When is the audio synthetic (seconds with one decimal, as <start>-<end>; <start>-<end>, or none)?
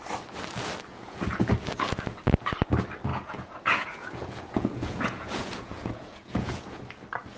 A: 0.9-1.5; 3.1-6.7